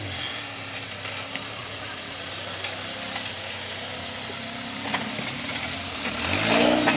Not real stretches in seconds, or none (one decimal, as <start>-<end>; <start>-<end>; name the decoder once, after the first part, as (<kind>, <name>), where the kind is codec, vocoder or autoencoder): 1.6-2.3 (vocoder, Vocos)